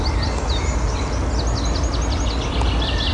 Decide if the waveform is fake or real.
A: real